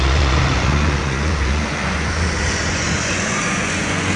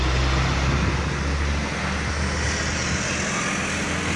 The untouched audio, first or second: second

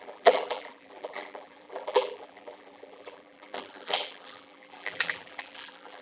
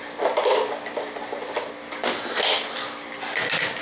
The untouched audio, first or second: second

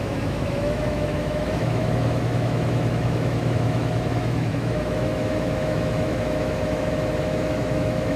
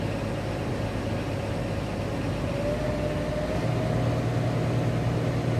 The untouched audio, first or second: second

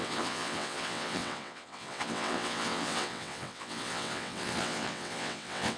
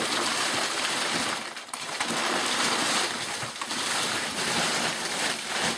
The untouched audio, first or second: second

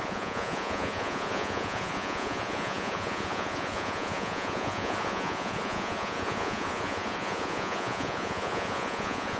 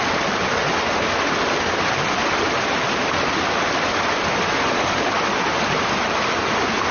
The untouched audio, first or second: second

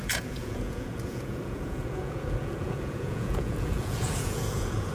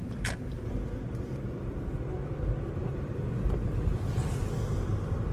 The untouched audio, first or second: second